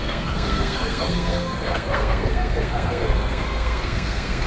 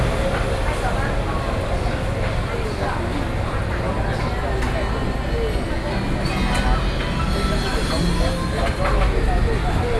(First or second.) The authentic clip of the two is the second